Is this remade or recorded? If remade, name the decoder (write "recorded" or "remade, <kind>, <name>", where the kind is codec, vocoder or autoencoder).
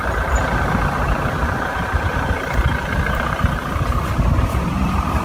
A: remade, vocoder, BigVGAN v2